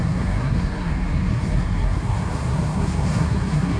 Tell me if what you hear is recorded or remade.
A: remade